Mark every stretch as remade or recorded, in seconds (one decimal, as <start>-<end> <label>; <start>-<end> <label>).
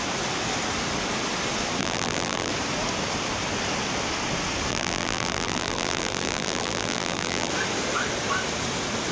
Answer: 0.0-1.8 recorded; 1.8-2.5 remade; 2.5-4.7 recorded; 4.7-7.5 remade; 7.5-9.1 recorded